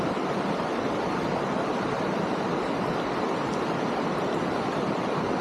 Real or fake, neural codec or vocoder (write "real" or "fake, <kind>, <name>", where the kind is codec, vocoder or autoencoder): real